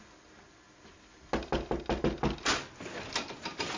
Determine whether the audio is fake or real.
real